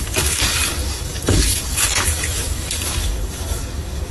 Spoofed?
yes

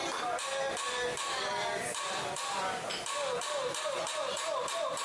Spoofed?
no